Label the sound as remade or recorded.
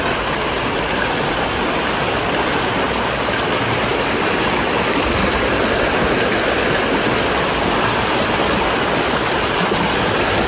recorded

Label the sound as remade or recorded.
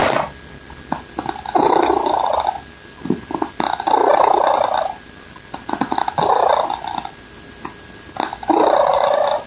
recorded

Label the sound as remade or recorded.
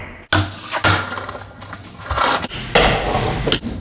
recorded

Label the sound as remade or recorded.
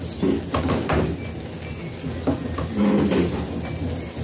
recorded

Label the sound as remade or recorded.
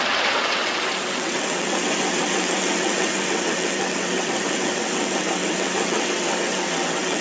remade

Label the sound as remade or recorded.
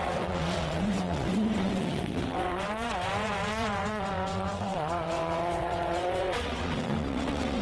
remade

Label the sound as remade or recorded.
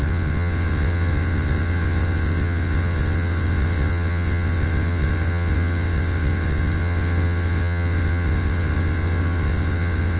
remade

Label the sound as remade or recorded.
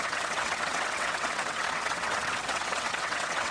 remade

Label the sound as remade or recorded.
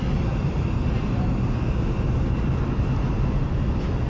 recorded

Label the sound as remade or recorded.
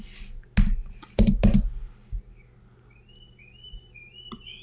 recorded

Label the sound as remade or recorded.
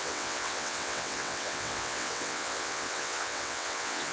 remade